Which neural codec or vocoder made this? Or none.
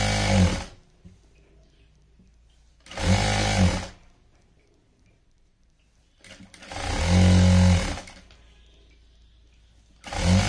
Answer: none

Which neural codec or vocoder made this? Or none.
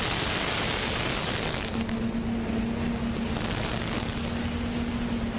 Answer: none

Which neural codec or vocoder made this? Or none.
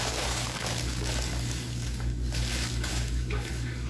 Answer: codec, DAC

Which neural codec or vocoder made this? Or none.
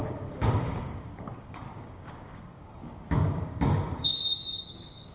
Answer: codec, DAC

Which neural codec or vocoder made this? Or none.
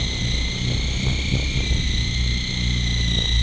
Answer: none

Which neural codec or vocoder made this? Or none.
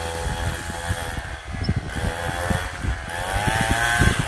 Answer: none